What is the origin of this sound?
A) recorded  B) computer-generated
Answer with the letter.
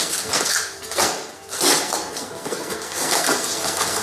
B